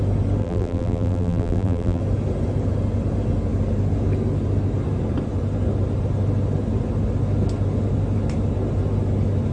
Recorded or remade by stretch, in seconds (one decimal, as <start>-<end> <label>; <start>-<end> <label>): 0.0-0.4 recorded; 0.4-2.0 remade; 2.0-9.5 recorded